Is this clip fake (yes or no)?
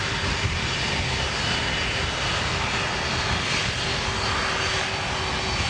no